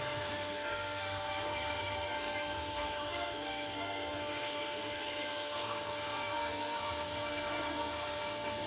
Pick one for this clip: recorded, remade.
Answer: remade